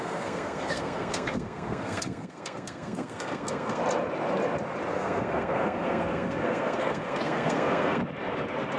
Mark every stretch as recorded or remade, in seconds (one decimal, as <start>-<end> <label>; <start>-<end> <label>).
0.0-3.8 remade; 3.8-4.9 recorded; 4.9-8.0 remade; 8.0-8.8 recorded